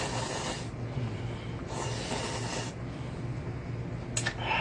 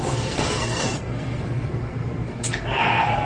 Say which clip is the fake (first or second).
second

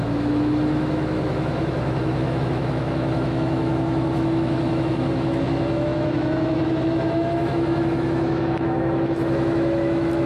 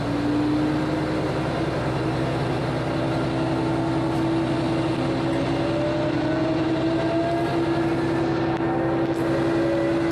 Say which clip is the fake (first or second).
first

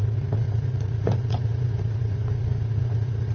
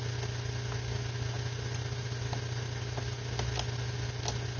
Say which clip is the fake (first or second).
first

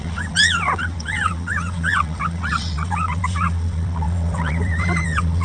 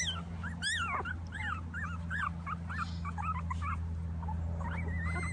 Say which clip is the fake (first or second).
first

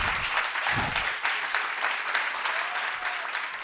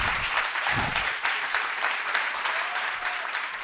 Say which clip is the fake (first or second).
second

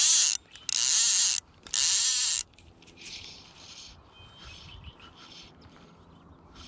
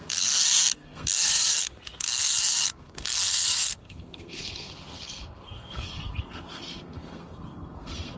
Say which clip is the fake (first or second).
second